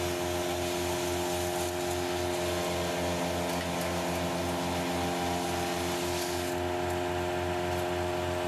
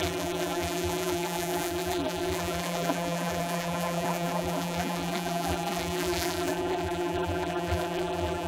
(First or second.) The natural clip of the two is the first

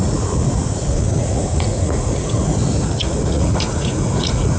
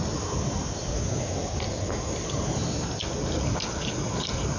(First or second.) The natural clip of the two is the second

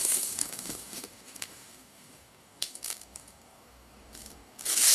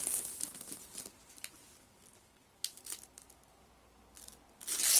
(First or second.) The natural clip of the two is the second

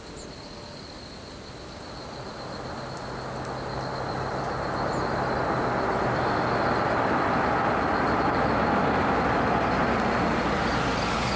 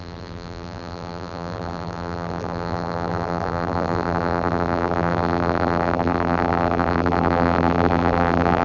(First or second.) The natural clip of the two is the first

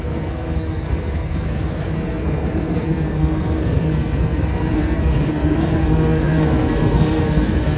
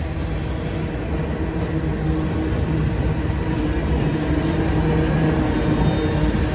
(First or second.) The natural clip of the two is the second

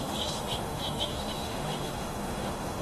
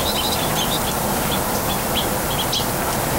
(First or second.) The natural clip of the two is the second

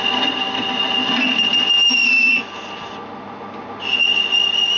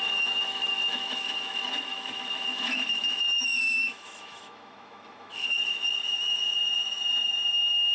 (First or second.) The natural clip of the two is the first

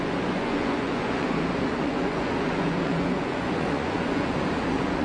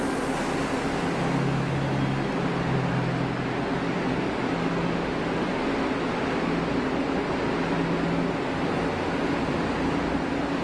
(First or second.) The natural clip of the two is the second